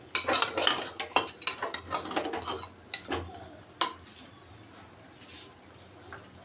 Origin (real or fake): real